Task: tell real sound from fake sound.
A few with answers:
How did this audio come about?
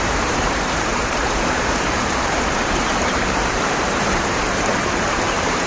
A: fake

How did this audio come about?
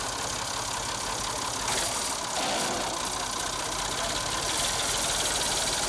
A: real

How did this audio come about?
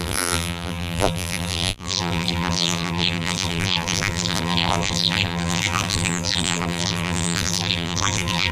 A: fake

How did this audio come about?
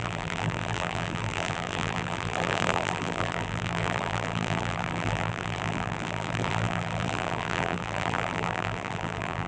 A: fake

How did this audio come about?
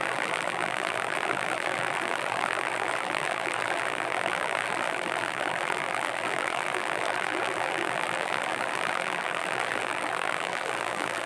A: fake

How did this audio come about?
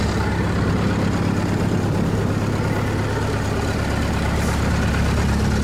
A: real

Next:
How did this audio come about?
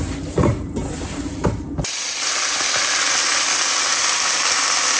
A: fake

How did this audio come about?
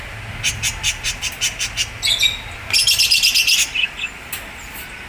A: real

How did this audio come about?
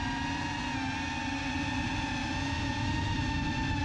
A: real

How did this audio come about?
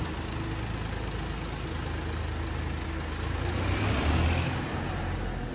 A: real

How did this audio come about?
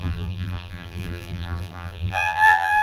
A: fake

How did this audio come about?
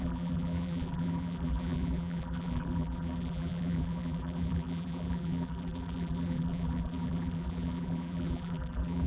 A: fake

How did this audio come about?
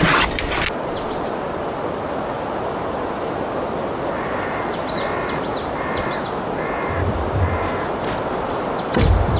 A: fake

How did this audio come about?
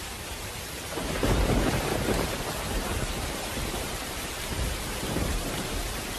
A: fake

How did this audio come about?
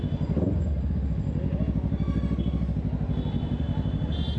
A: real